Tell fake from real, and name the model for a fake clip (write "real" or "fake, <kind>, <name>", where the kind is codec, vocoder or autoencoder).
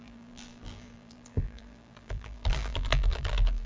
fake, vocoder, BigVGAN v2